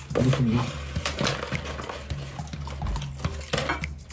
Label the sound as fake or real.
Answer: real